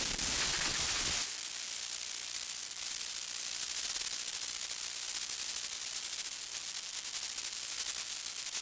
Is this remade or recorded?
recorded